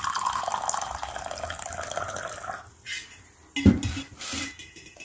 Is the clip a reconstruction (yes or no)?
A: no